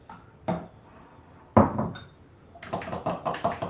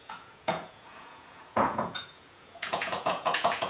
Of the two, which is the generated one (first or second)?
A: second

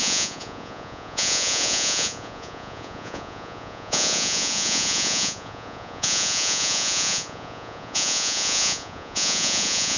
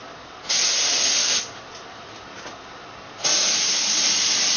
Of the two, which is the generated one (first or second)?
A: first